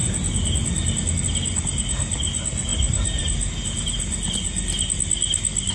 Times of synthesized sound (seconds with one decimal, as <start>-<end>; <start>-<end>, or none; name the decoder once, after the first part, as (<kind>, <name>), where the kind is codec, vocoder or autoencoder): none